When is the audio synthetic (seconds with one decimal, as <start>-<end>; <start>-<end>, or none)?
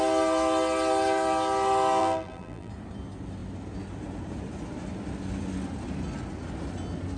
2.0-2.7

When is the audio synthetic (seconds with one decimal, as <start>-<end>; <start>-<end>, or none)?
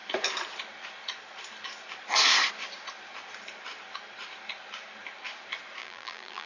5.8-6.5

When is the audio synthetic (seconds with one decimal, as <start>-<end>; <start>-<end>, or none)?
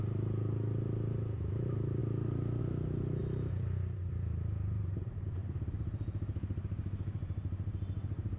3.2-5.7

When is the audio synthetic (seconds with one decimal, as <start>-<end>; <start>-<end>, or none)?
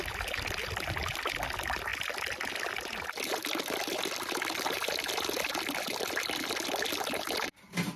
none